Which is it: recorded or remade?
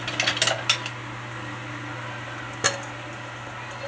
recorded